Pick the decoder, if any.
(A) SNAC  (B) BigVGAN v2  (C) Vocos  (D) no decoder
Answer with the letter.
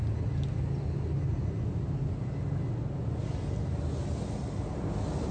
D